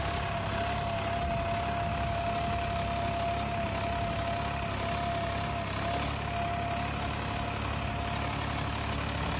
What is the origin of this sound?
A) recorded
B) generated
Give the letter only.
A